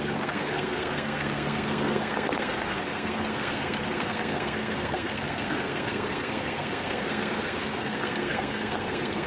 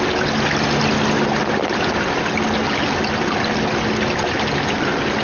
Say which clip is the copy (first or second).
first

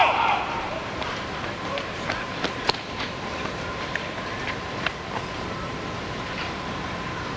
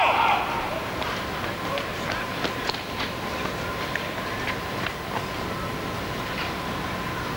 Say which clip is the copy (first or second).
first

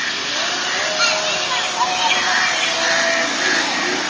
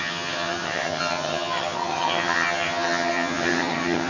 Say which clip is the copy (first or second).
second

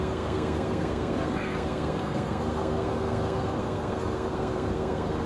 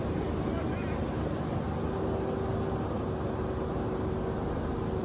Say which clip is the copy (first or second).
first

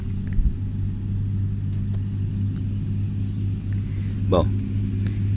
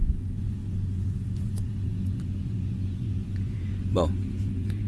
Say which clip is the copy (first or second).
second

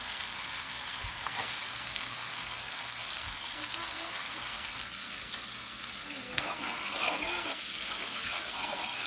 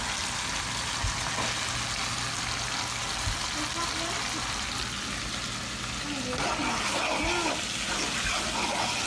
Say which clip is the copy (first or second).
first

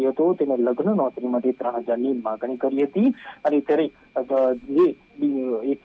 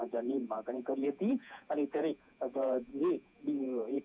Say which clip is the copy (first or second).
second